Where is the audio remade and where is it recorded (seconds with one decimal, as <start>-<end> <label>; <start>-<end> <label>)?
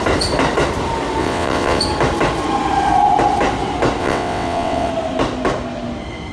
0.0-1.2 recorded; 1.2-1.8 remade; 1.8-4.0 recorded; 4.0-4.9 remade; 4.9-6.3 recorded